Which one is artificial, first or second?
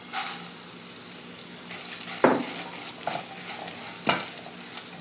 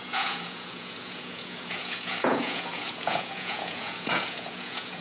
second